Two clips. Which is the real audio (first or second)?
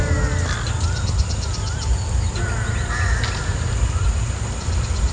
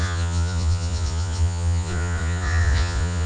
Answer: first